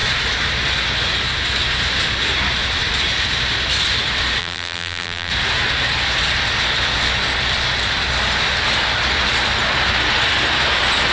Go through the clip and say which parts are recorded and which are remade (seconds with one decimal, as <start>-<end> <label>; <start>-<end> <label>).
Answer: 0.0-4.4 recorded; 4.4-5.3 remade; 5.3-11.1 recorded